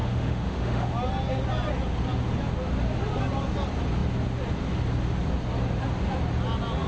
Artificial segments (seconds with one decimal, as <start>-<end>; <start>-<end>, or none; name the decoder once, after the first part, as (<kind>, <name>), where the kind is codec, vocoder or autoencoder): 0.0-0.9 (autoencoder, DAC-VAE)

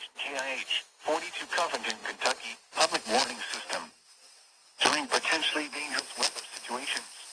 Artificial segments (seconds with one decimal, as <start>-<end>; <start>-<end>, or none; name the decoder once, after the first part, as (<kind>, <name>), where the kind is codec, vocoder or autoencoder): 4.6-6.0 (codec, DAC)

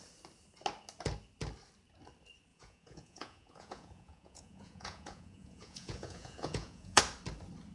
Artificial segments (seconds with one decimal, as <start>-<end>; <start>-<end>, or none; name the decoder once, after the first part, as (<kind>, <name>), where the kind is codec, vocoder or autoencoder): 2.5-7.0 (vocoder, Vocos)